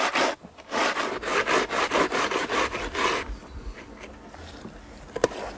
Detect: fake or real real